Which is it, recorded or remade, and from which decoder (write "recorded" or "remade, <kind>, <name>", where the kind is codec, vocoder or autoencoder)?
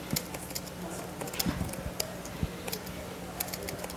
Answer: recorded